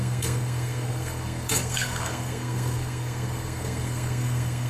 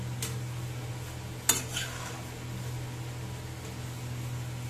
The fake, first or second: first